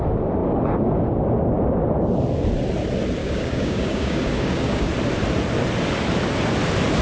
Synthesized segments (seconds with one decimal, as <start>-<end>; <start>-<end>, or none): 3.2-4.9

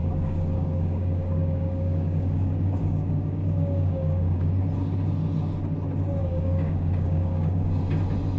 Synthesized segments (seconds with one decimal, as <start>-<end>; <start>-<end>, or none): 0.0-4.6; 6.2-7.8

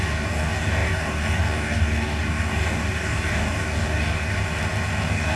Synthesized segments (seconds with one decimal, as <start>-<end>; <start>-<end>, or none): 0.0-4.4; 5.0-5.4

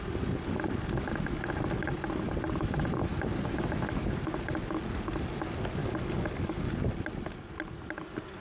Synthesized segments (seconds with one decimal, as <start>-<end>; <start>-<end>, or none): 5.8-6.7

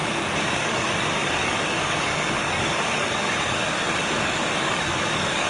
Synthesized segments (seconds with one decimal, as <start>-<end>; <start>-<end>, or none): 0.5-5.5

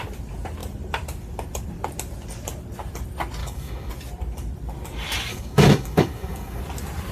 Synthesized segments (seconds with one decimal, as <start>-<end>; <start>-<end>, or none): 3.4-3.9; 5.3-6.6

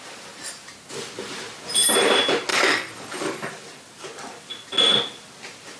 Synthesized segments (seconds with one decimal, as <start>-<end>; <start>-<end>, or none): 2.5-3.5

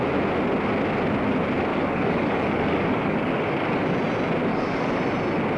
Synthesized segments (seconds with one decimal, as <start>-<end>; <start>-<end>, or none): 1.7-3.8; 4.5-5.0